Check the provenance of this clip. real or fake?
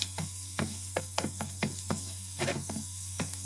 fake